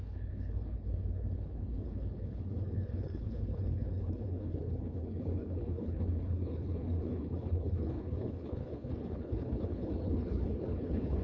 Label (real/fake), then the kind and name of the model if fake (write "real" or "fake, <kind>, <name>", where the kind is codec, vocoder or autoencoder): fake, codec, HILCodec